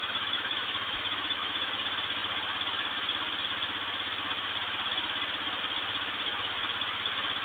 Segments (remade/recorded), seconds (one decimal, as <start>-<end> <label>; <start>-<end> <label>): 0.0-1.7 remade; 1.7-7.4 recorded